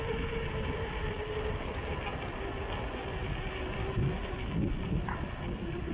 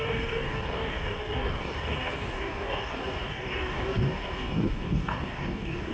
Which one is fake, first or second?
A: second